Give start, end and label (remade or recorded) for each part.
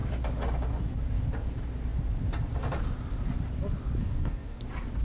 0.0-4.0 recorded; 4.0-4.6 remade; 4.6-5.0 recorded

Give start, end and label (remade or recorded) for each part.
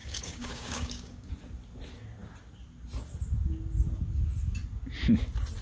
0.0-1.3 remade; 1.3-5.6 recorded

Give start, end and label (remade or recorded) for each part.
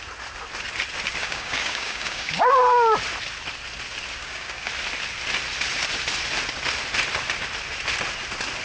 0.0-1.2 recorded; 1.2-2.3 remade; 2.3-4.2 recorded; 4.2-4.7 remade; 4.7-8.6 recorded